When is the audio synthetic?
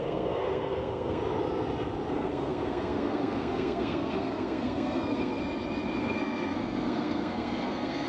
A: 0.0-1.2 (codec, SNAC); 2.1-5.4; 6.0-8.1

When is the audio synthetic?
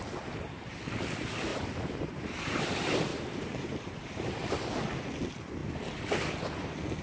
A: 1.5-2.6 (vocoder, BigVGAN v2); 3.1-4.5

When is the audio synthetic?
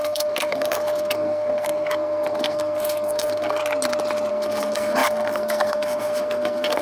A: 0.0-3.6 (codec, SNAC); 4.3-6.8